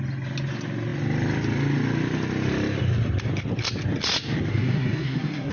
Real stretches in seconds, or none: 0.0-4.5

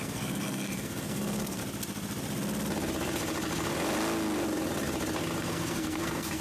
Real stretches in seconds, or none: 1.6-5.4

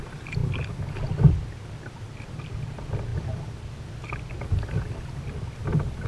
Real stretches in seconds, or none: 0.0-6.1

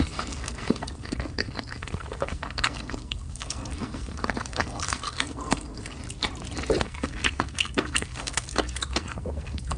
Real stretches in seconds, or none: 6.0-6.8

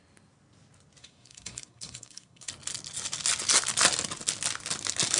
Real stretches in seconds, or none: 0.0-1.0; 2.5-5.2

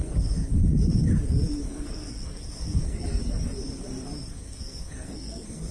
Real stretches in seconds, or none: 0.5-1.7; 3.2-4.3

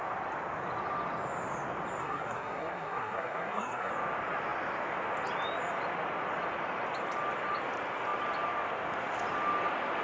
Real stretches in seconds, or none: 0.0-2.0; 3.9-10.0

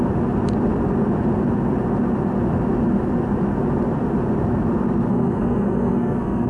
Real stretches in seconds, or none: 0.0-5.1